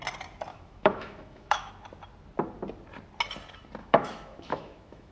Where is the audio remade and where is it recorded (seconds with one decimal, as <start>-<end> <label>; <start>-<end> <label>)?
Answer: 0.0-0.5 recorded; 0.5-1.7 remade; 1.7-3.8 recorded; 3.8-5.1 remade